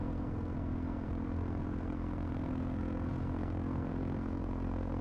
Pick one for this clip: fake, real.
fake